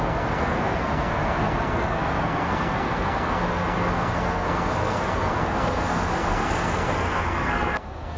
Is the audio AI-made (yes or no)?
yes